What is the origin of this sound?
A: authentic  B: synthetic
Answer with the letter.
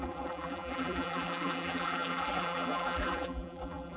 B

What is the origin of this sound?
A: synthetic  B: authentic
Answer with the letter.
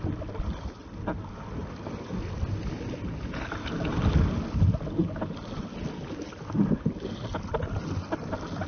B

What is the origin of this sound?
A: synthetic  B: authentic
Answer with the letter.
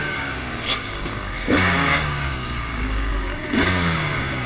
A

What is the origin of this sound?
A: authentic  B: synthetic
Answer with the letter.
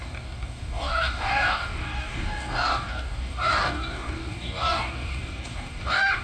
B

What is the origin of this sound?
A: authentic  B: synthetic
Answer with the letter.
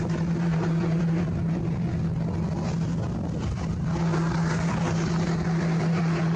A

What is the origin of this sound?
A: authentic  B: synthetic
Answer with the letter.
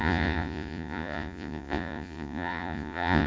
B